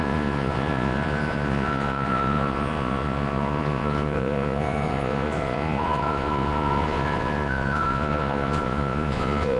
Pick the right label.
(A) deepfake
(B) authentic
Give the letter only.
A